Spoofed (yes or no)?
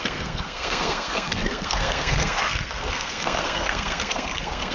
yes